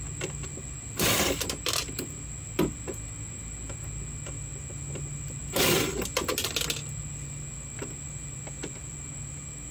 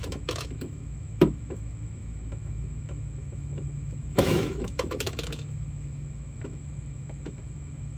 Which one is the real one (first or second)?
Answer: first